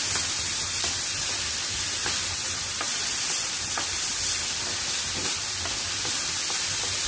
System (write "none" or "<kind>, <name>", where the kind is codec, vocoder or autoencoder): none